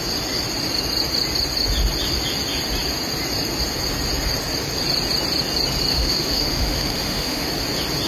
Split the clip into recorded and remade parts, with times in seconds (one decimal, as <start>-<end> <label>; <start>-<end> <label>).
0.0-5.9 recorded; 5.9-7.5 remade; 7.5-8.1 recorded